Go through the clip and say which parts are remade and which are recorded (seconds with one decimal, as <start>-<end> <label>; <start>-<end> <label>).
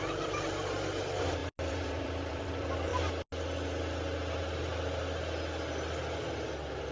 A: 0.0-2.9 remade; 2.9-6.9 recorded